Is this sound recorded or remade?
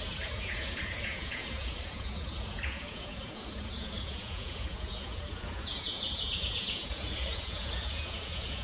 remade